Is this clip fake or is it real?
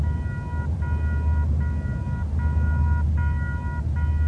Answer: real